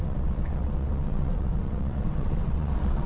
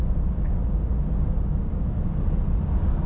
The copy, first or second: first